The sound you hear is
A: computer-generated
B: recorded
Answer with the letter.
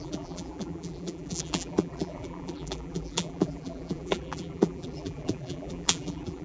A